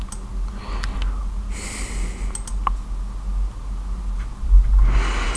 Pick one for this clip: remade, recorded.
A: recorded